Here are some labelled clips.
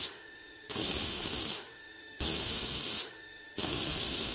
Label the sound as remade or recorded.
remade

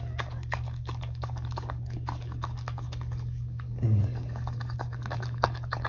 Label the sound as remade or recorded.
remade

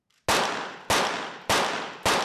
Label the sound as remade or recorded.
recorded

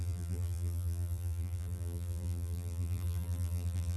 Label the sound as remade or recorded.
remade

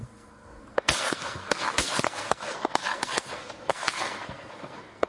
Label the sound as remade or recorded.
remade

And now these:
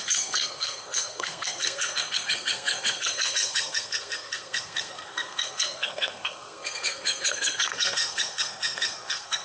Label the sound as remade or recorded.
remade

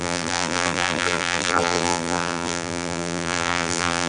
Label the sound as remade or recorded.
remade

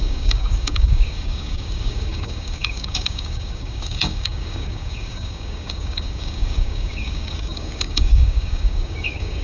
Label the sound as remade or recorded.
remade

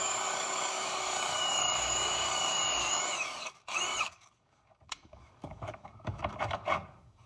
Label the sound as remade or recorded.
remade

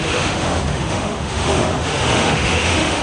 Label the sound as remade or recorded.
remade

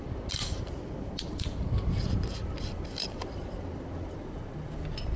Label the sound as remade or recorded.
recorded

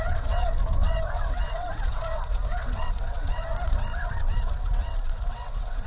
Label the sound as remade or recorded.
remade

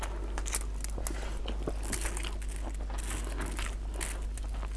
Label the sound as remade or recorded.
recorded